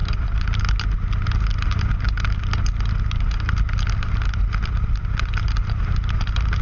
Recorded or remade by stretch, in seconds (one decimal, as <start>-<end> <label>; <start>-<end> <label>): 0.0-0.6 remade; 0.6-6.6 recorded